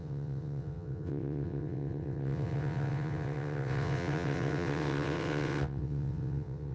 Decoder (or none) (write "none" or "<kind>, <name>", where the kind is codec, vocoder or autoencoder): vocoder, WaveNeXt